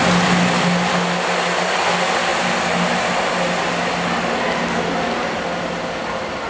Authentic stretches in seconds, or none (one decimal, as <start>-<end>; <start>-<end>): 0.0-6.5